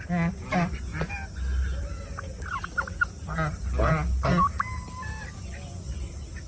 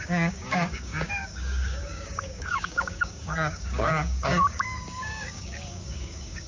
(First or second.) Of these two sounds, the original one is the first